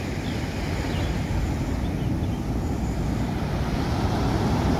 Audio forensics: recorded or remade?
recorded